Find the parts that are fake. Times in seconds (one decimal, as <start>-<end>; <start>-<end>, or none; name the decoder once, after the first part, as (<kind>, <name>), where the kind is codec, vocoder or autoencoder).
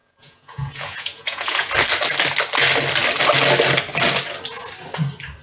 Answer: 0.0-1.7 (vocoder, Vocos)